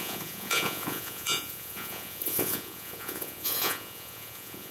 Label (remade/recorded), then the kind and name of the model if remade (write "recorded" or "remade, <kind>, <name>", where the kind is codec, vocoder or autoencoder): remade, vocoder, Vocos